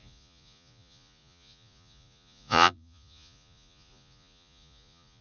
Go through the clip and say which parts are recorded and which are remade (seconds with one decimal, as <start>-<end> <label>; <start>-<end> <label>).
0.0-5.2 remade

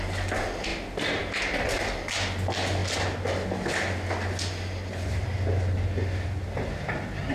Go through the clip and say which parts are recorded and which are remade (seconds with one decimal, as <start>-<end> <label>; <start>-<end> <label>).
0.0-7.3 recorded

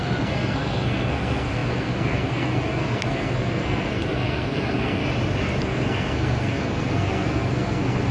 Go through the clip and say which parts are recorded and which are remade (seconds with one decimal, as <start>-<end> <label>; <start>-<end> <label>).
0.0-5.0 remade; 5.0-5.6 recorded; 5.6-8.1 remade

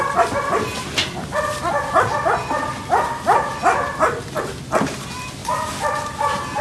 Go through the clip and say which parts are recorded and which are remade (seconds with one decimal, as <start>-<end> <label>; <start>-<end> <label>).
0.0-0.7 recorded; 0.7-1.9 remade; 1.9-6.6 recorded

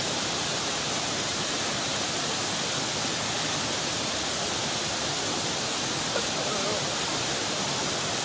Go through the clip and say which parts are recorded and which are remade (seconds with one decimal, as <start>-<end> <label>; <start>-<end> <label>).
0.0-1.9 remade; 1.9-6.0 recorded; 6.0-8.2 remade